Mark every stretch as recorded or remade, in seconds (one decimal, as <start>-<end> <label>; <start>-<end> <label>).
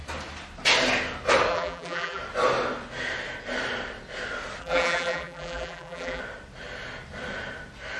0.0-1.5 recorded; 1.5-2.2 remade; 2.2-4.6 recorded; 4.6-6.2 remade; 6.2-8.0 recorded